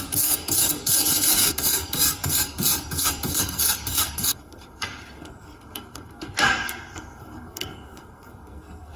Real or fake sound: fake